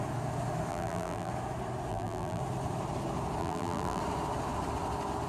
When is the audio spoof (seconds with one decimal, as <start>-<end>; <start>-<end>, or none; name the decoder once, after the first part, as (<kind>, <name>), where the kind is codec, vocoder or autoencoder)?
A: 0.7-1.3 (vocoder, BigVGAN v2); 1.9-2.4; 3.4-4.0